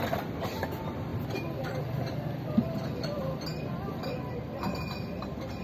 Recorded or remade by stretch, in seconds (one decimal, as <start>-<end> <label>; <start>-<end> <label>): 0.0-5.6 recorded